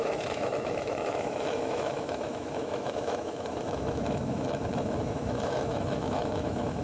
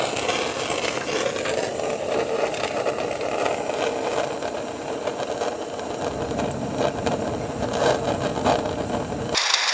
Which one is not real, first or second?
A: first